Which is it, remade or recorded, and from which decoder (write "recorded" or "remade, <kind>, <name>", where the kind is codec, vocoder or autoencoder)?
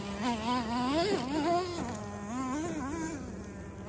recorded